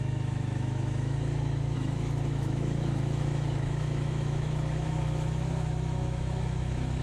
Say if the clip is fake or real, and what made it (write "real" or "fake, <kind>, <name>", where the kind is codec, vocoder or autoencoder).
fake, autoencoder, DAC-VAE